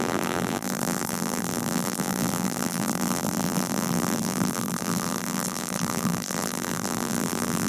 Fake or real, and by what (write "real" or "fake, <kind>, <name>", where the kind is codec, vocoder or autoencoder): fake, vocoder, BigVGAN v2